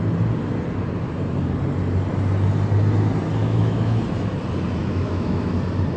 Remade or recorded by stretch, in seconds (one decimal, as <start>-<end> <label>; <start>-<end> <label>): 0.0-3.4 recorded; 3.4-4.0 remade; 4.0-4.8 recorded; 4.8-5.5 remade; 5.5-6.0 recorded